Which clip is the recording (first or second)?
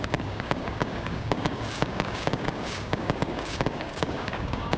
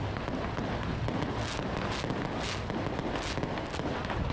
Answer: second